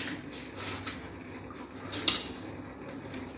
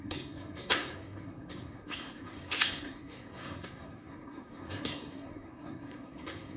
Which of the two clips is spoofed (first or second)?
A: second